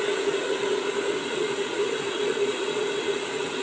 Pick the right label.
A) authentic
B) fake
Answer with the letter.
B